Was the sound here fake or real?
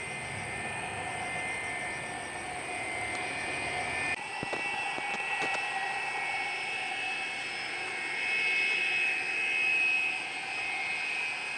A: real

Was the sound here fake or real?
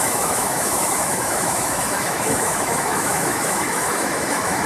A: fake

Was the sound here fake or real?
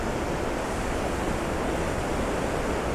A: real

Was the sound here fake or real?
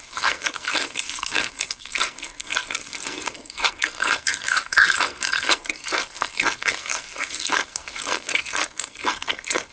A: fake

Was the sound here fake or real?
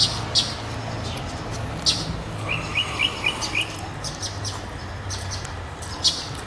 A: real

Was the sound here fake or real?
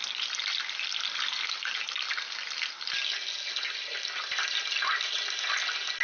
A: real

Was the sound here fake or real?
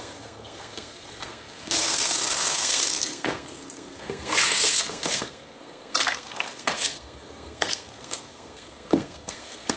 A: fake